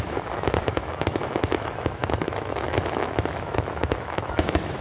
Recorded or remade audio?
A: remade